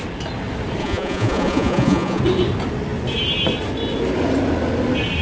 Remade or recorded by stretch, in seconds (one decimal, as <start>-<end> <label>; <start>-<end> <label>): 0.0-0.8 recorded; 0.8-2.2 remade; 2.2-5.2 recorded